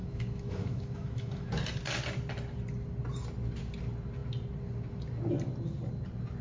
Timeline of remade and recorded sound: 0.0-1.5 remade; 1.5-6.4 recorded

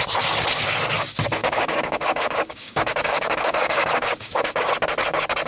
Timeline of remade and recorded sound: 0.0-1.4 recorded; 1.4-4.7 remade; 4.7-5.5 recorded